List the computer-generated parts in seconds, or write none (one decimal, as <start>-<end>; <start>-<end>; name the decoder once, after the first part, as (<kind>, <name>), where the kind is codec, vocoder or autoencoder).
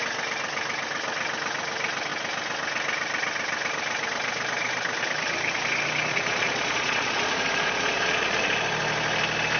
6.1-8.5 (vocoder, Vocos)